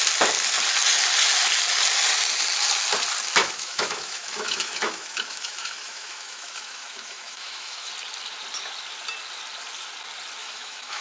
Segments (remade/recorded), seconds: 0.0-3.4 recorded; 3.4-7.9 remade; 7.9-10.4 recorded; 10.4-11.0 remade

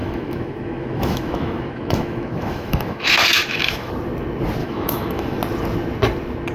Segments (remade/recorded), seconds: 0.0-3.9 remade; 3.9-4.6 recorded; 4.6-5.4 remade; 5.4-6.5 recorded

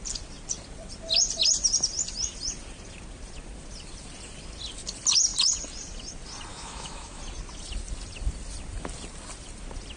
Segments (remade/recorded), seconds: 0.0-6.5 recorded; 6.5-7.2 remade; 7.2-10.0 recorded